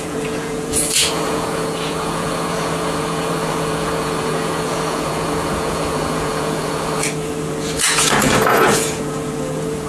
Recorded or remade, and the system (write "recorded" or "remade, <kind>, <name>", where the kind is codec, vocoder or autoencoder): remade, vocoder, Vocos